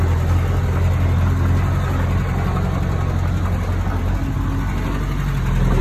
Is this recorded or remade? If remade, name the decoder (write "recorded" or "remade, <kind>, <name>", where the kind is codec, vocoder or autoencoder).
recorded